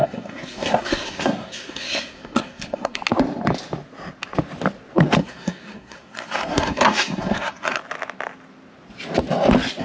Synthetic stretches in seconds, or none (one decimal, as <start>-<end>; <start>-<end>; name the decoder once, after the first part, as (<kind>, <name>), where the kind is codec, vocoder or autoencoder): 0.0-3.0 (codec, SNAC); 5.2-7.8